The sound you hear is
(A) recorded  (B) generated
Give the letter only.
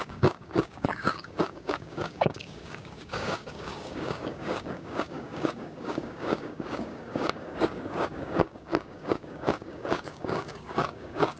B